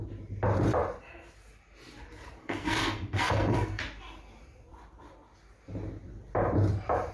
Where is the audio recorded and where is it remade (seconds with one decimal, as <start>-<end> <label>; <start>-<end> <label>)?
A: 0.0-2.4 recorded; 2.4-3.8 remade; 3.8-7.1 recorded